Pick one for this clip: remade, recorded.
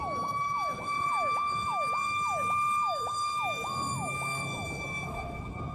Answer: remade